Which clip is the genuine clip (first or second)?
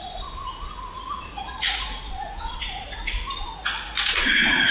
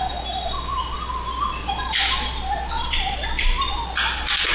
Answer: second